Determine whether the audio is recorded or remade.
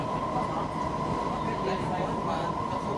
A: recorded